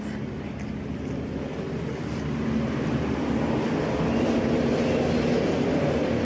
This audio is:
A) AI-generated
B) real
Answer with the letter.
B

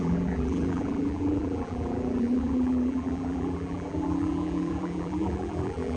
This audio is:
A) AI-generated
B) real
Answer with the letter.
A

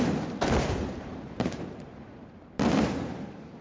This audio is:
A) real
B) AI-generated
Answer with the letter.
B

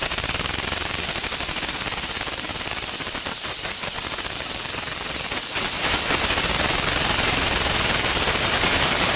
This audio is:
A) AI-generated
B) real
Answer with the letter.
A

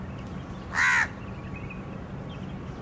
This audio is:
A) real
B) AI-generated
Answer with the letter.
A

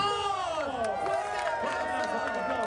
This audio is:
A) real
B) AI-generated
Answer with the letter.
A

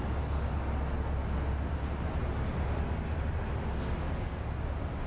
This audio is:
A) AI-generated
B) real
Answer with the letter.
B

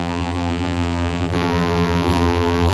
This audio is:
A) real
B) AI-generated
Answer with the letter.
B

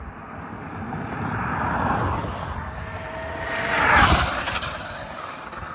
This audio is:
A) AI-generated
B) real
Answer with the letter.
A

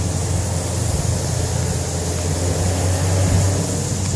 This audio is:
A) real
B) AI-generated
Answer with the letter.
A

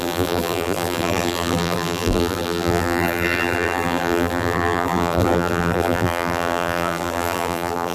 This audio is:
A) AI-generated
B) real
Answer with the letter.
A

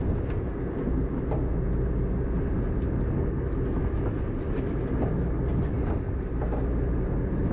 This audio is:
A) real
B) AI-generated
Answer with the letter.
A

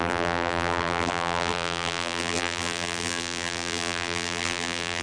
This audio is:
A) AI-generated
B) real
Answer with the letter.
A